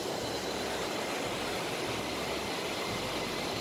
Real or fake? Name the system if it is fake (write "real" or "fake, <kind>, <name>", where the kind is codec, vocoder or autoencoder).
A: real